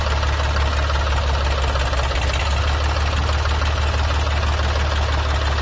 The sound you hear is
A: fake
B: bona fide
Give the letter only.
B